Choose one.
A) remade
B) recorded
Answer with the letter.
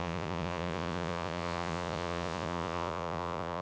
A